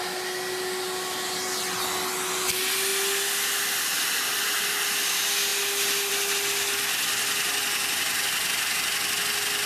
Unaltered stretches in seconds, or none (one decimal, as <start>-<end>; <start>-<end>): 0.0-9.7